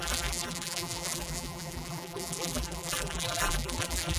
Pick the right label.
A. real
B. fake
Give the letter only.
B